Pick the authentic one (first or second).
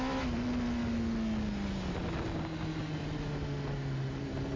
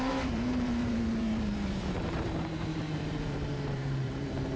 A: first